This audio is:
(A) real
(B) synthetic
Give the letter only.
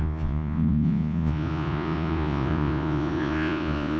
B